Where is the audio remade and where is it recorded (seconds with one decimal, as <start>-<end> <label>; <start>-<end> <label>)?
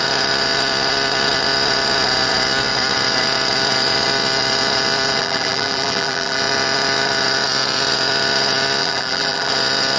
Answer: 0.0-5.2 recorded; 5.2-6.4 remade; 6.4-8.8 recorded; 8.8-9.5 remade; 9.5-10.0 recorded